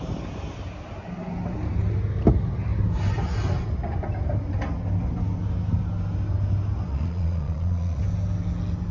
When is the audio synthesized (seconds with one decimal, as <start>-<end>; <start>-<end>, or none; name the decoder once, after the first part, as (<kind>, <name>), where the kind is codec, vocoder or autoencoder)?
6.9-8.0 (vocoder, Vocos)